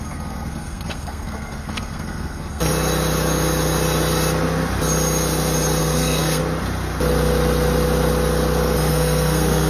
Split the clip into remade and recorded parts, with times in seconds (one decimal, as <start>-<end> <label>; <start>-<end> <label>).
0.0-2.7 remade; 2.7-5.8 recorded; 5.8-6.4 remade; 6.4-8.9 recorded; 8.9-9.7 remade